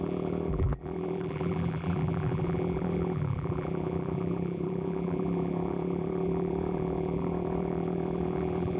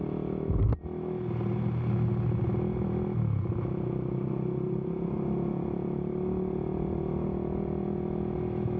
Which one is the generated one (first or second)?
first